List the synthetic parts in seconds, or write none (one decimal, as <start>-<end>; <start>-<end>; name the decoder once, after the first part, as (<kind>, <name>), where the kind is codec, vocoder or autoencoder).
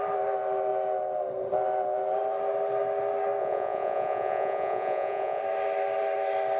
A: 3.4-5.4 (vocoder, Vocos)